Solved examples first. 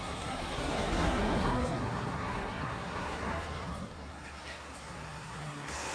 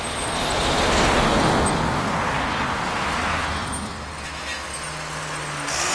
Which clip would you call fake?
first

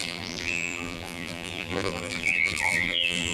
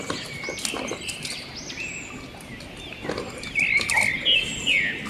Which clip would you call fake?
first